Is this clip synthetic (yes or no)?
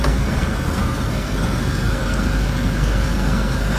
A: yes